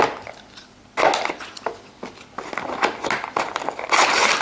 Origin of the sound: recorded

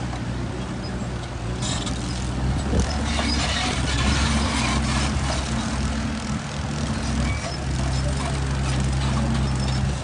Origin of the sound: recorded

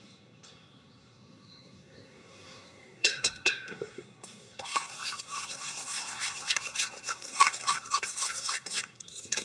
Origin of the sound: remade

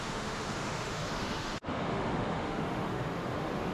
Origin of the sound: remade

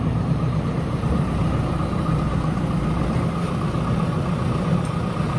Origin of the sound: remade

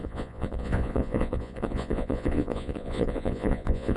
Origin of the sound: remade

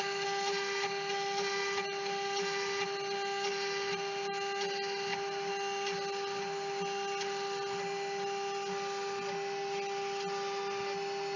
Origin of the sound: recorded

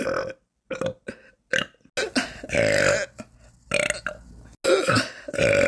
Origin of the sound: recorded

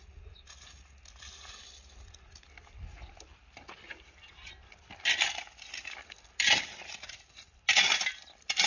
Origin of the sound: recorded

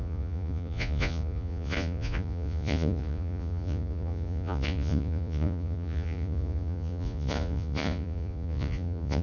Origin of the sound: remade